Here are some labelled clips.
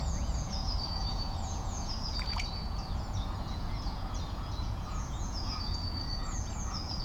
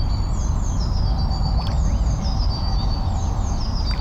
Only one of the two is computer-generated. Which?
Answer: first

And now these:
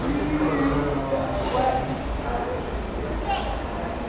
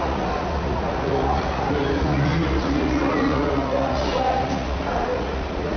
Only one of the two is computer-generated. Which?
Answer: second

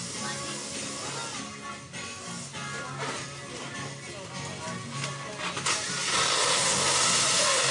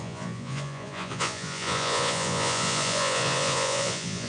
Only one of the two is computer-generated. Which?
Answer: second